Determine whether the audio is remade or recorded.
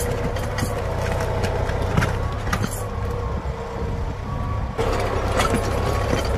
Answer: recorded